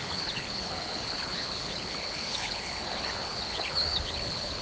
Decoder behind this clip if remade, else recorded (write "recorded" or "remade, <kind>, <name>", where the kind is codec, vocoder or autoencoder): remade, codec, HILCodec